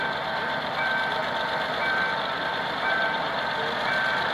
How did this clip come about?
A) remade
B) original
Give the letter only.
A